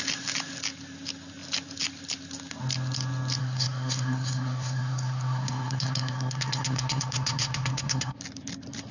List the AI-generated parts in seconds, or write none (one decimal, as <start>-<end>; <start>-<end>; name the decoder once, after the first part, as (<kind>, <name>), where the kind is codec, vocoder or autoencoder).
3.4-8.2 (codec, SNAC)

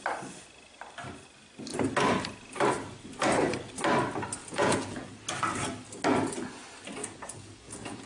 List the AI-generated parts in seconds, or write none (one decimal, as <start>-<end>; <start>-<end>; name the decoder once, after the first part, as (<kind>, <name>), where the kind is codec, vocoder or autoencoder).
4.4-5.1 (vocoder, Vocos); 7.0-8.1

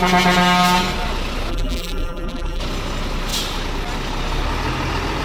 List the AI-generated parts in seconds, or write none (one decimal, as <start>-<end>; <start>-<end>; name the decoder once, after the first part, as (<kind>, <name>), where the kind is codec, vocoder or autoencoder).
1.5-2.6 (vocoder, BigVGAN v2)

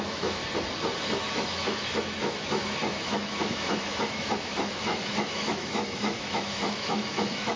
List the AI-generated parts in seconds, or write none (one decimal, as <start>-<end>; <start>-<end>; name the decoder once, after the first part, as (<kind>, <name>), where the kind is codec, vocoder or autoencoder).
0.0-0.4 (autoencoder, DAC-VAE); 1.2-7.6

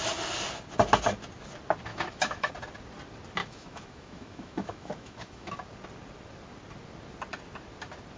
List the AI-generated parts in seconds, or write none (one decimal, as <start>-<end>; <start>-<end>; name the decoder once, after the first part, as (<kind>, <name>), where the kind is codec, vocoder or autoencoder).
1.9-2.5 (autoencoder, DAC-VAE); 3.4-5.5

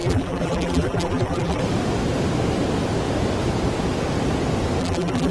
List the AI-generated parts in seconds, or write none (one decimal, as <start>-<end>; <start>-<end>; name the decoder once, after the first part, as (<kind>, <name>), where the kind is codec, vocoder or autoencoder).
0.0-1.6 (vocoder, BigVGAN v2); 4.8-5.3

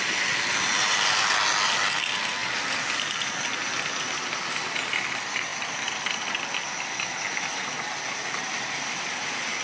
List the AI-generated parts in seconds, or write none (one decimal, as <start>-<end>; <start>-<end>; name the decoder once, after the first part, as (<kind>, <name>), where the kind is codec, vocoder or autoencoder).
none

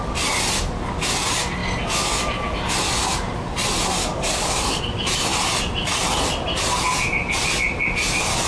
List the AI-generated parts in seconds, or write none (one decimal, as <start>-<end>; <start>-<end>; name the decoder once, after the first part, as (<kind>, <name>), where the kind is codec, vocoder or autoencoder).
4.0-4.8 (codec, DAC)